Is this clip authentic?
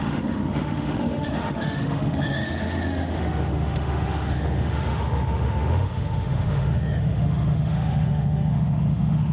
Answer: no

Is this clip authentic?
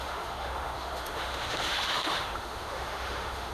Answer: no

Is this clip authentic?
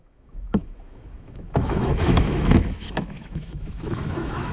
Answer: no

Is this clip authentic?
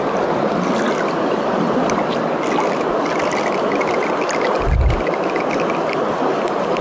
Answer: yes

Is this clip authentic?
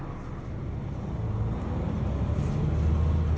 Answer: yes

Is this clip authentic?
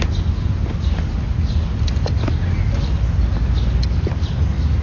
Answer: yes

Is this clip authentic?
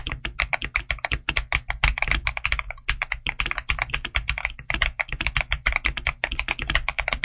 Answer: yes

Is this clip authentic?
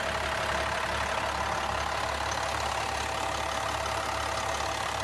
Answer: yes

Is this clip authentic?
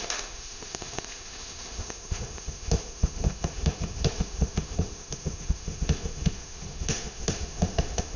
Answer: no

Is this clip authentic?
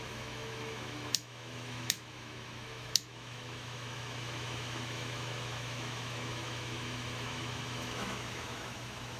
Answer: no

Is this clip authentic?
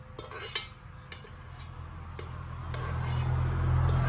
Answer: yes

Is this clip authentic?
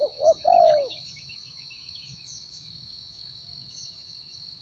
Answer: no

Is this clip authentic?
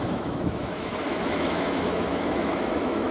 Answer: no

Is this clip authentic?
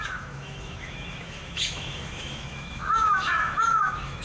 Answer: no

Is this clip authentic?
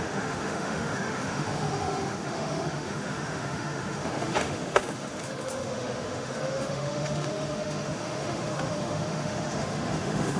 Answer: no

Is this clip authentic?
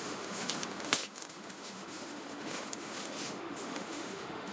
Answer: no